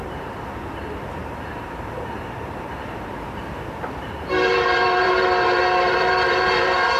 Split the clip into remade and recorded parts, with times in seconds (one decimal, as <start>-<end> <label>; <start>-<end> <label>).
0.0-3.1 remade; 3.1-4.0 recorded; 4.0-7.0 remade